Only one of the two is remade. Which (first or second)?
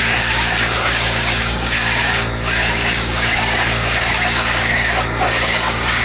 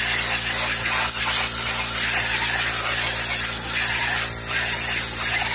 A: first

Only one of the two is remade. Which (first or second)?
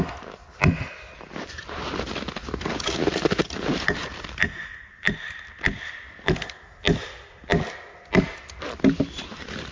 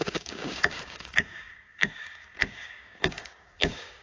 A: second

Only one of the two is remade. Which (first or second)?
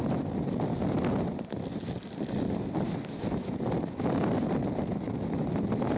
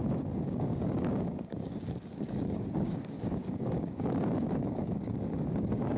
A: second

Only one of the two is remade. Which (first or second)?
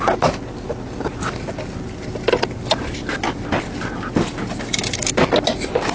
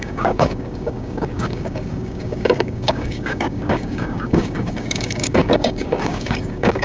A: second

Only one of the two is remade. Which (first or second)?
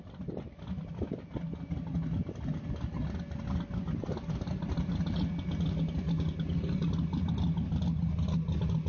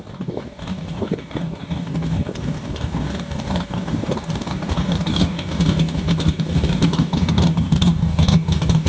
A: second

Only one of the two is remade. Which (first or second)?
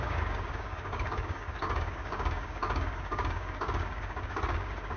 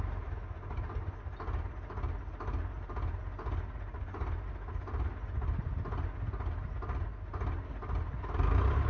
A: first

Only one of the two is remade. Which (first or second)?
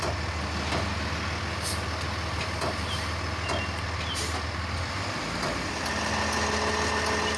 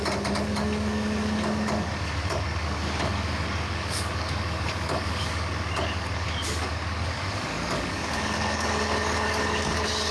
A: second